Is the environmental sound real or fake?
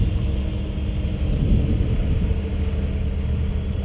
real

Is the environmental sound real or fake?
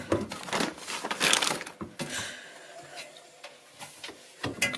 real